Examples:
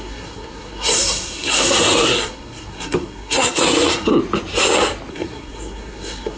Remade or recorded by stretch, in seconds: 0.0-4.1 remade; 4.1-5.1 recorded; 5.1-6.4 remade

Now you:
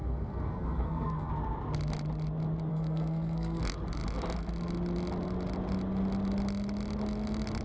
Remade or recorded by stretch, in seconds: 0.0-1.3 remade; 1.3-2.7 recorded; 2.7-3.6 remade; 3.6-7.6 recorded

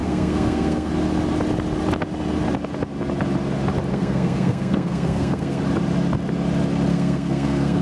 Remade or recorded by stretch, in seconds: 0.0-0.9 remade; 0.9-3.9 recorded; 3.9-5.6 remade; 5.6-6.9 recorded; 6.9-7.8 remade

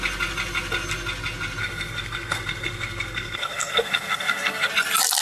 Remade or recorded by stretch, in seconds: 0.0-1.6 recorded; 1.6-4.7 remade; 4.7-5.2 recorded

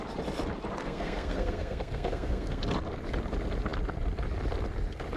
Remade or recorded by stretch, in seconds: 0.0-0.8 recorded; 0.8-2.6 remade; 2.6-5.2 recorded

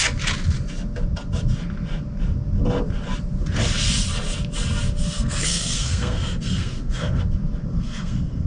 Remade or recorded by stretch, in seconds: 0.0-5.0 recorded; 5.0-7.2 remade; 7.2-7.7 recorded; 7.7-8.5 remade